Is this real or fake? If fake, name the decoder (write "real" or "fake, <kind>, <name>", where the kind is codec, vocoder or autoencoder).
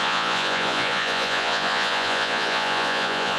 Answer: fake, vocoder, Vocos